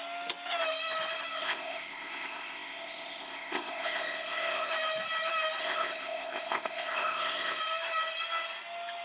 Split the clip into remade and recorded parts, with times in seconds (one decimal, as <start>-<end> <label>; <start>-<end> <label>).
0.0-1.4 recorded; 1.4-4.7 remade; 4.7-5.6 recorded; 5.6-7.6 remade; 7.6-9.0 recorded